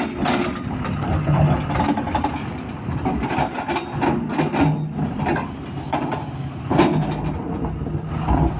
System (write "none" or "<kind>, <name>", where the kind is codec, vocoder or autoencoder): none